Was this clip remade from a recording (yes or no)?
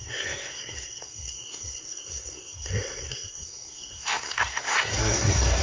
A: yes